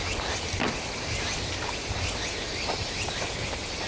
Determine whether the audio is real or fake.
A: real